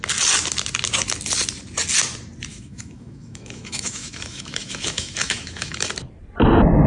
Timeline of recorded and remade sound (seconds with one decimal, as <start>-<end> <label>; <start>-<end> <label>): 0.0-2.5 recorded; 2.5-5.9 remade; 5.9-6.9 recorded